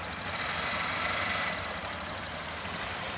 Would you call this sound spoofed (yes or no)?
no